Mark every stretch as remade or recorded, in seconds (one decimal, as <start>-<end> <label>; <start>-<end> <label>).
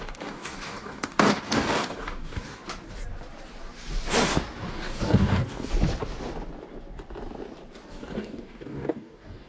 0.0-2.6 remade; 2.6-4.7 recorded; 4.7-5.7 remade; 5.7-7.9 recorded; 7.9-9.5 remade